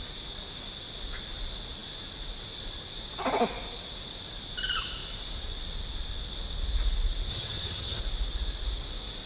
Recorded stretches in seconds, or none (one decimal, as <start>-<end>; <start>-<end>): 0.0-7.3; 8.0-9.3